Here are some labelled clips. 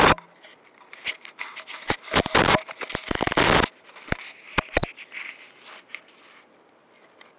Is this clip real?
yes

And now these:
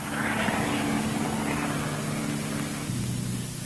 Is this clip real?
yes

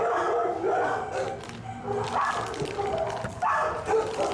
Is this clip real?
yes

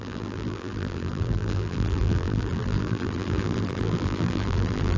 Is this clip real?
no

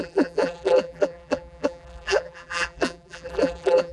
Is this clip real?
no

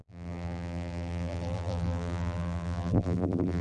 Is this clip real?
no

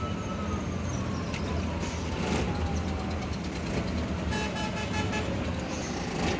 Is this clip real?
yes